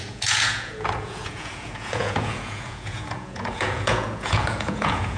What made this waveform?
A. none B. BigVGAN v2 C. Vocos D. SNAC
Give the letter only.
C